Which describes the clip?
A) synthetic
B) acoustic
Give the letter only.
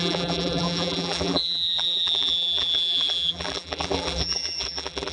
A